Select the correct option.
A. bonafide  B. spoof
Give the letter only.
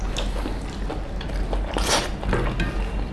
A